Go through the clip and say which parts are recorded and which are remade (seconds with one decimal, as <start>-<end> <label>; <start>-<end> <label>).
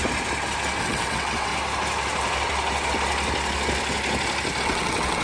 0.0-0.8 recorded; 0.8-1.5 remade; 1.5-4.6 recorded; 4.6-5.2 remade